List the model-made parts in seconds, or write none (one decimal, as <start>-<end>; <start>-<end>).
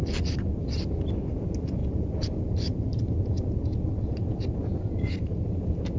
none